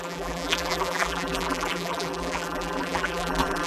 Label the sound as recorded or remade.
remade